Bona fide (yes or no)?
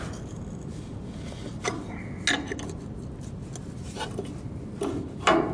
yes